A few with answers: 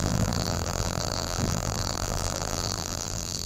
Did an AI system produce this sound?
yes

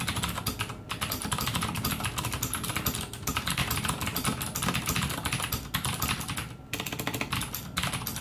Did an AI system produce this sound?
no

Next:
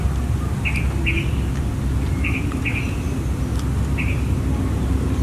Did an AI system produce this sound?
no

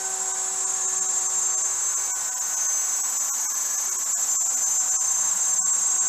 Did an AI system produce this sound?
no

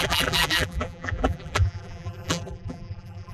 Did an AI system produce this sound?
yes